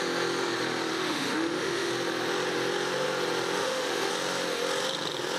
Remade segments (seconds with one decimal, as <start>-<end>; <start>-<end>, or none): 0.9-1.9; 3.6-4.1